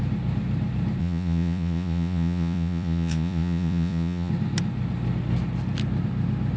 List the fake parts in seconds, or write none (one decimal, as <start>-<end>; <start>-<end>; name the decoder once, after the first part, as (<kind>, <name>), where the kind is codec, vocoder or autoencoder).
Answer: 1.0-4.3 (vocoder, Vocos)

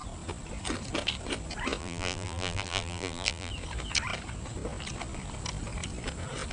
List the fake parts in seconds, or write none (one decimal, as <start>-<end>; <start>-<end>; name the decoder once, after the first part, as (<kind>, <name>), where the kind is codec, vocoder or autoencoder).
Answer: 1.8-3.5 (vocoder, BigVGAN v2)

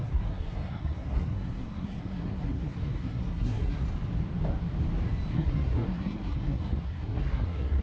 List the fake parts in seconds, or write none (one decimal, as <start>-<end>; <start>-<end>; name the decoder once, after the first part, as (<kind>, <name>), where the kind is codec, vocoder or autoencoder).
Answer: 0.0-3.8 (codec, SNAC); 5.3-7.8

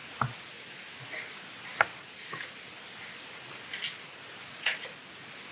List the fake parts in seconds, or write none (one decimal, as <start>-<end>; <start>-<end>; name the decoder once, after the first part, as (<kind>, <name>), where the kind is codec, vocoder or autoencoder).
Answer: none

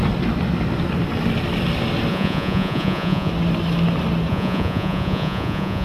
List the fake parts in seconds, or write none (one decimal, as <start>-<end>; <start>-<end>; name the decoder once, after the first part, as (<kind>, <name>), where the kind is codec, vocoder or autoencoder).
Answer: 2.1-3.3 (vocoder, Vocos); 4.3-5.8

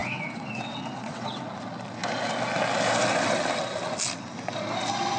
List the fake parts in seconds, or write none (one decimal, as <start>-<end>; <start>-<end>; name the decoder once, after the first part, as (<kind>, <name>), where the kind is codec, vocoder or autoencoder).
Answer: 0.0-1.4 (vocoder, WaveNeXt)